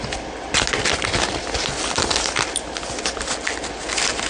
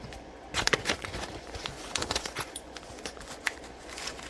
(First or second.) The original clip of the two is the first